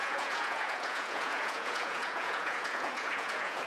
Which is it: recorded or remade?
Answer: remade